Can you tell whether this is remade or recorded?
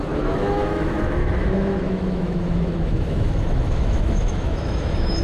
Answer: remade